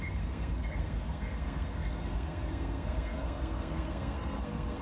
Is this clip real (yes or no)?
no